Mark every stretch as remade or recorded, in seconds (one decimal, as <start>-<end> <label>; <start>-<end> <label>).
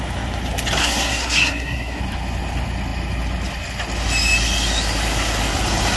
0.0-0.8 recorded; 0.8-2.0 remade; 2.0-6.0 recorded